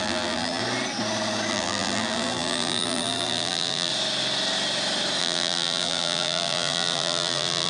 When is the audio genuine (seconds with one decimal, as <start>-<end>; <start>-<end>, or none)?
0.6-1.5; 3.9-5.2